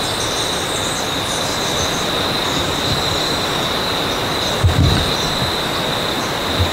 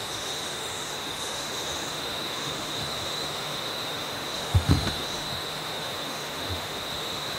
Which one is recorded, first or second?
first